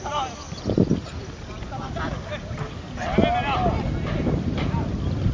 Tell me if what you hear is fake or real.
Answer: real